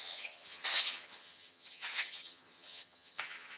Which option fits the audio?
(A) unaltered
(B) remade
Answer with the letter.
B